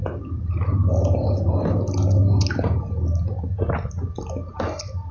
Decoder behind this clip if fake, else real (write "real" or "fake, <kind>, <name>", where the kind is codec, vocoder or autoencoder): real